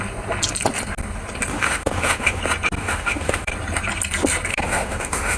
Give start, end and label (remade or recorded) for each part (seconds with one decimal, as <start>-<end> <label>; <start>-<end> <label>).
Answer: 0.0-1.5 recorded; 1.5-2.4 remade; 2.4-2.8 recorded; 2.8-3.5 remade; 3.5-4.5 recorded; 4.5-5.4 remade